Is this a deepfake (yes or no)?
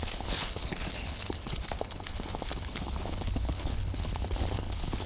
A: yes